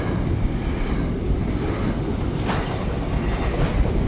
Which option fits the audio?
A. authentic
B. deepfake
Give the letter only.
A